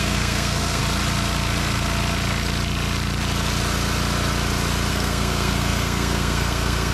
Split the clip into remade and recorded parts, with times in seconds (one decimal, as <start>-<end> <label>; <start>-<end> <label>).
0.0-0.8 remade; 0.8-4.9 recorded; 4.9-6.9 remade